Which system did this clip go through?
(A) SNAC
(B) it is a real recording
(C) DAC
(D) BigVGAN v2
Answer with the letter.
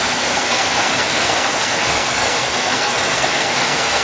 A